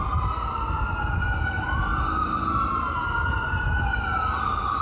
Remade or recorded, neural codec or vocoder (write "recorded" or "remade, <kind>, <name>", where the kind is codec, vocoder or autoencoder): recorded